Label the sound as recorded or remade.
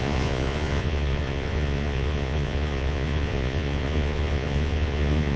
remade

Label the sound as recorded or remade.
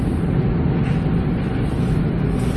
recorded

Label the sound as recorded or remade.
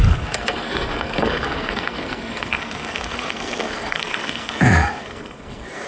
remade